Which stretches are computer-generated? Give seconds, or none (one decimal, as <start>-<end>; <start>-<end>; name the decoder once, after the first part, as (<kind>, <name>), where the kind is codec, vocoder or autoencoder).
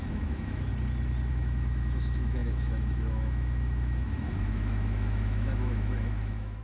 0.0-0.7 (autoencoder, DAC-VAE); 1.3-6.6